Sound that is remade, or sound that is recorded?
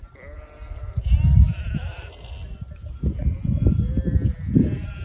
recorded